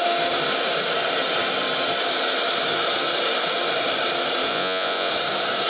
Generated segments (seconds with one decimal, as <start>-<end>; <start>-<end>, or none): 4.5-5.1